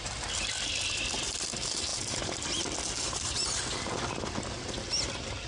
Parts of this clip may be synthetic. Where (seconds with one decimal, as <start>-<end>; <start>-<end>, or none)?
none